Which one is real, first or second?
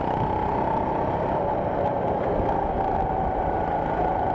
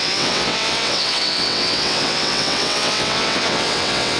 first